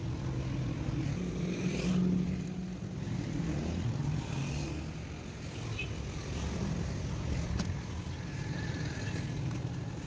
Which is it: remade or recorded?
recorded